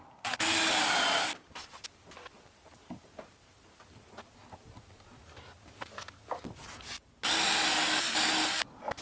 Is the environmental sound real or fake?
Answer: real